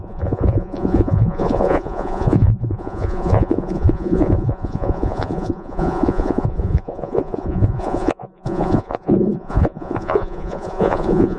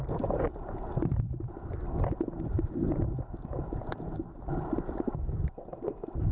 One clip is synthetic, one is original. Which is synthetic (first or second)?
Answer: first